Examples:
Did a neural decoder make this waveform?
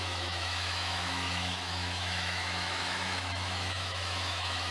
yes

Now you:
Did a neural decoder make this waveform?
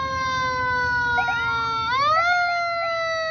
no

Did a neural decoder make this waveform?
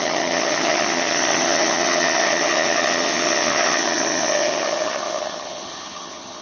yes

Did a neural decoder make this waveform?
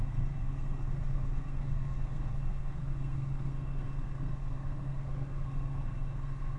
yes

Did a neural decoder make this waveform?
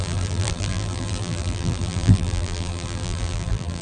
yes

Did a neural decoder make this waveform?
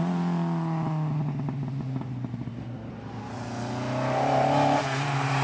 no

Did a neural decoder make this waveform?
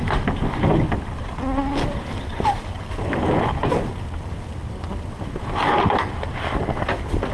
no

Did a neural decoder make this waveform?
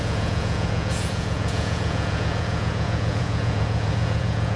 yes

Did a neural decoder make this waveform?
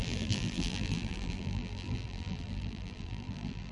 yes